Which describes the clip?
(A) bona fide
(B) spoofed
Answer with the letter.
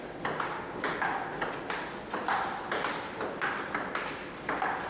A